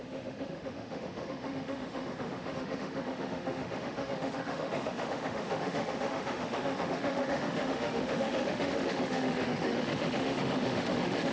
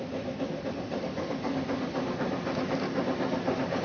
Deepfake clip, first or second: first